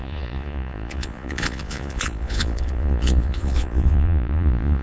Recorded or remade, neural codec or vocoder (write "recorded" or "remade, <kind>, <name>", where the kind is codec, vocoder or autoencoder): remade, vocoder, Vocos